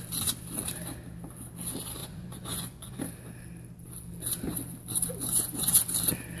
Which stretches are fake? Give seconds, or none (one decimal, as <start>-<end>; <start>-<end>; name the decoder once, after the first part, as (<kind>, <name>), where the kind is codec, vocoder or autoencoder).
2.0-3.0 (vocoder, Vocos); 5.2-5.8